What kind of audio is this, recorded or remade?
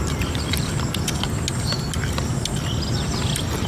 recorded